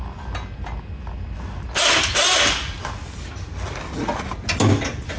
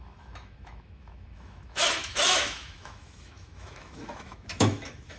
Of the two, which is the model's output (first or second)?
second